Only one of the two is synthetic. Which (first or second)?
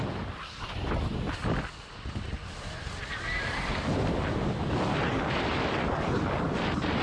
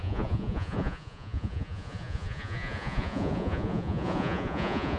second